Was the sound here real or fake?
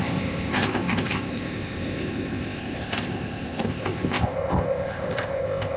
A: fake